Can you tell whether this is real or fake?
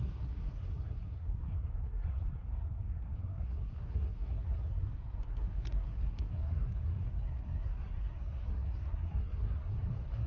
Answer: fake